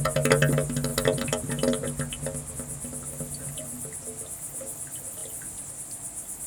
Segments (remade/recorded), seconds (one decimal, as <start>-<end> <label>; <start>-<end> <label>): 0.0-6.5 recorded